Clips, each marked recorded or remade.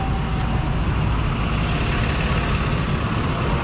recorded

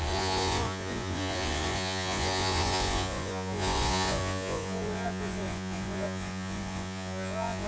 remade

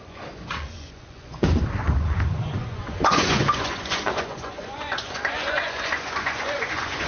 remade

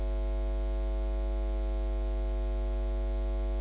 recorded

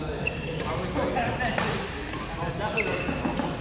recorded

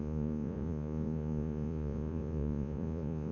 remade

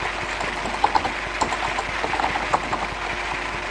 recorded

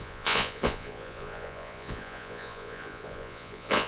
remade